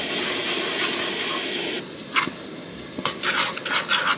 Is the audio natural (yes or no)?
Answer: yes